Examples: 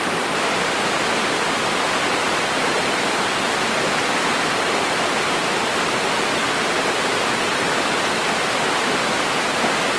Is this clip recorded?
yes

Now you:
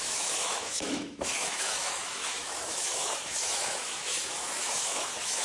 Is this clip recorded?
no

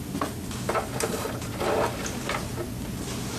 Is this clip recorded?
yes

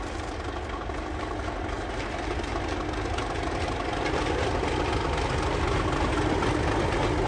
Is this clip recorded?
yes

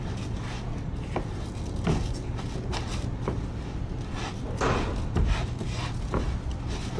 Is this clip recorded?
yes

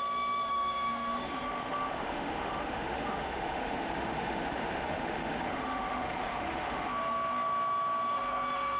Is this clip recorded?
no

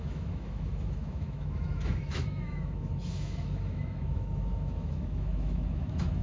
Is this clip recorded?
no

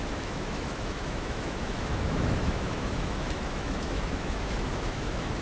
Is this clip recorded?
no